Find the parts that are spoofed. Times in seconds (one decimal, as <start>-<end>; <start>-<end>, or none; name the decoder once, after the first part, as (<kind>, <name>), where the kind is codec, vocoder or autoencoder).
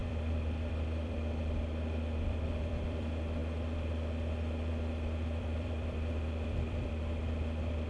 0.0-3.4 (vocoder, BigVGAN v2); 4.7-7.9